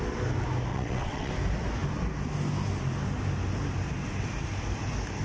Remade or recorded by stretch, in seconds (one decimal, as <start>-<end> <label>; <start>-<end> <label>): 0.0-0.7 recorded; 0.7-1.3 remade; 1.3-5.2 recorded